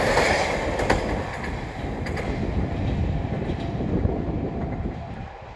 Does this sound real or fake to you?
real